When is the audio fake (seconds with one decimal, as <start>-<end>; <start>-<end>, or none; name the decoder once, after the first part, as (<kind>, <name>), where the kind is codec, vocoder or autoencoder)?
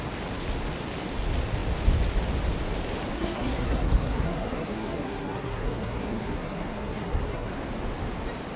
3.1-7.5 (codec, SNAC)